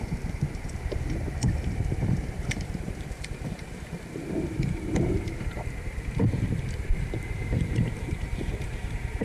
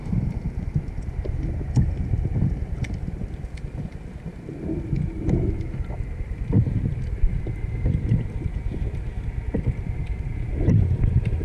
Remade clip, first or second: first